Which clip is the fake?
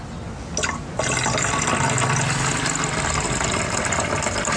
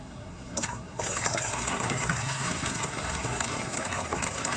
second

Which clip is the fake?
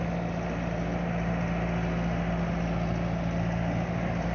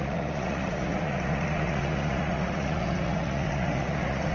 second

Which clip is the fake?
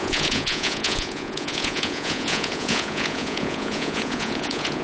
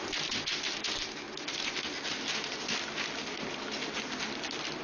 first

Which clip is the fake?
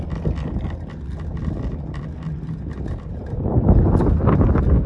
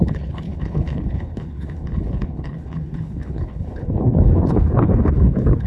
second